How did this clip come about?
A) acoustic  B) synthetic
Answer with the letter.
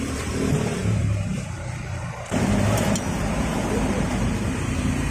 B